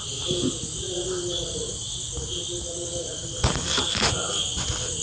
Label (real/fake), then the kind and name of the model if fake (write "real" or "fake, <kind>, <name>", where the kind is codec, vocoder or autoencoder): real